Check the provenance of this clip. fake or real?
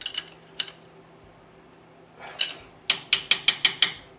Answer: real